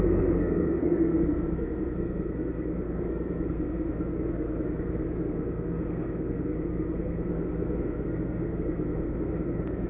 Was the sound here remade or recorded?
remade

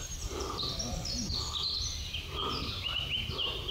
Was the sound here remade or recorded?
remade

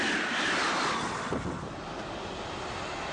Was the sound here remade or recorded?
recorded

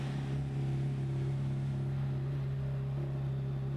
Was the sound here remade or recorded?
recorded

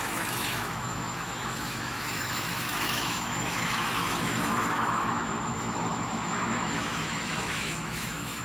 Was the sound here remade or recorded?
remade